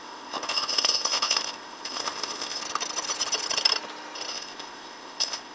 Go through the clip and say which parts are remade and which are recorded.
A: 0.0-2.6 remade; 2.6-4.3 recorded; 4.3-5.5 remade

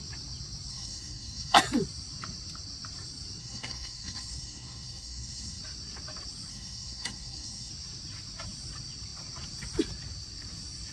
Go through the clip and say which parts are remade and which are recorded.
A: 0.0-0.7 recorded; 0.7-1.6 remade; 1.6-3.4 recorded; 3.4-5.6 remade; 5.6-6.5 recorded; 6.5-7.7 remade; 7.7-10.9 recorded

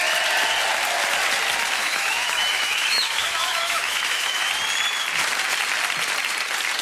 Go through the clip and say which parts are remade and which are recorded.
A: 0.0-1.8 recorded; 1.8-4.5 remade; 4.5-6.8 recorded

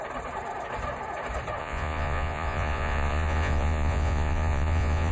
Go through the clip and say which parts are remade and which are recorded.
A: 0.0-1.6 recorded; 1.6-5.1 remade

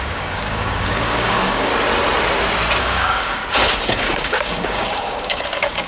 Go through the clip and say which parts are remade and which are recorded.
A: 0.0-1.7 remade; 1.7-2.8 recorded; 2.8-3.4 remade; 3.4-3.9 recorded; 3.9-5.9 remade

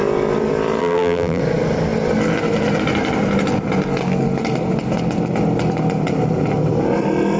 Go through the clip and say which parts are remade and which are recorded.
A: 0.0-0.8 recorded; 0.8-1.4 remade; 1.4-7.4 recorded

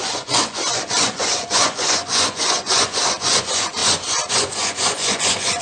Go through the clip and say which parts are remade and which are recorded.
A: 0.0-5.6 remade